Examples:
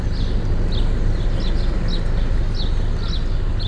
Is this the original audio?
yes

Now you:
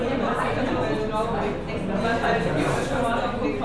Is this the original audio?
yes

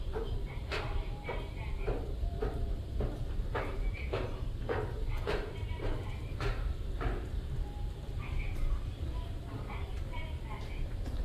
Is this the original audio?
no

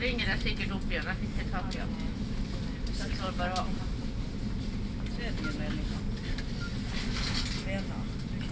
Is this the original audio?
yes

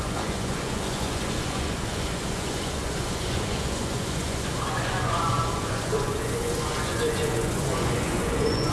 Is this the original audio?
no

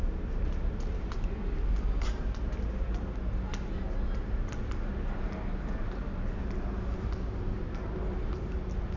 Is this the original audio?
yes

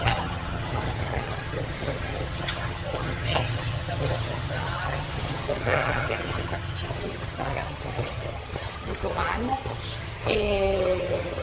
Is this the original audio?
no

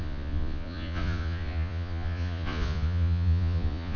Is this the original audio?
no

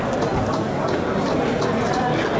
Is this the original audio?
yes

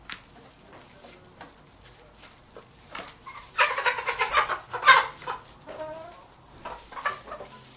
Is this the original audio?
yes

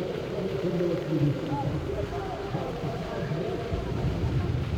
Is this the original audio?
no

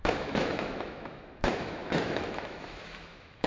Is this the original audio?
no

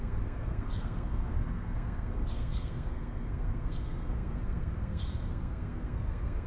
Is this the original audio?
no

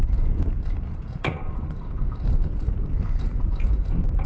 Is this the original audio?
no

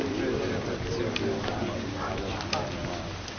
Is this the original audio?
yes